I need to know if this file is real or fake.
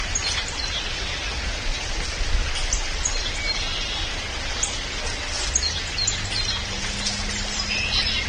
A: real